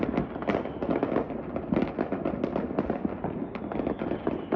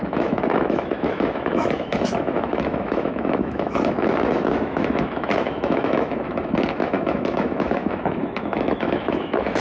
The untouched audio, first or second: first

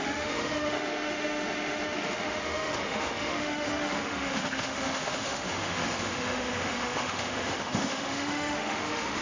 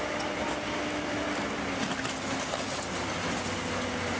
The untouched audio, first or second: second